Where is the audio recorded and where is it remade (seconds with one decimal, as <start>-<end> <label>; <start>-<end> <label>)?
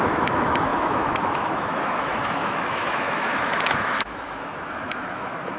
0.0-5.6 remade